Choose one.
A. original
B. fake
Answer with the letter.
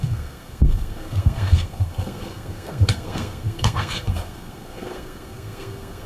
B